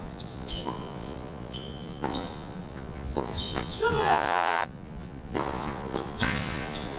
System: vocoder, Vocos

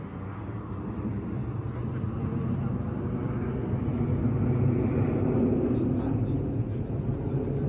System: none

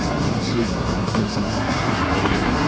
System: codec, SNAC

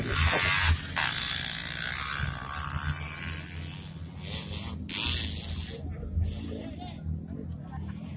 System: none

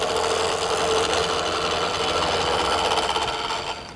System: none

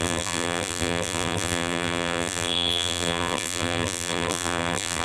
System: vocoder, BigVGAN v2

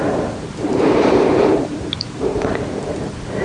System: vocoder, BigVGAN v2